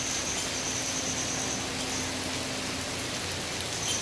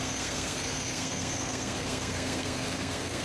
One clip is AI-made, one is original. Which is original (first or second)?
first